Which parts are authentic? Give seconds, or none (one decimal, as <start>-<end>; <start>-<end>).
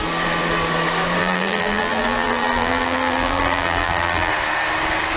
0.0-1.2; 4.3-5.2